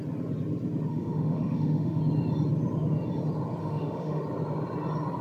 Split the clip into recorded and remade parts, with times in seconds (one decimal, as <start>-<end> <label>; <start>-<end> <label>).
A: 0.0-0.9 recorded; 0.9-2.0 remade; 2.0-3.6 recorded; 3.6-4.2 remade; 4.2-5.2 recorded